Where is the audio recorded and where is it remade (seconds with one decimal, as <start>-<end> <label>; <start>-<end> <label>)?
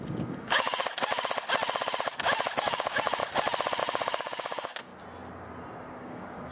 0.0-0.8 remade; 0.8-2.7 recorded; 2.7-3.2 remade; 3.2-3.8 recorded; 3.8-4.9 remade; 4.9-5.9 recorded; 5.9-6.5 remade